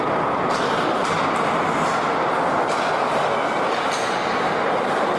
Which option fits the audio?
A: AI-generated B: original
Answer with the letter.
B